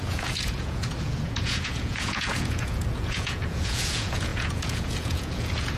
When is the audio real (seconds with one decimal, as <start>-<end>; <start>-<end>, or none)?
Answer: none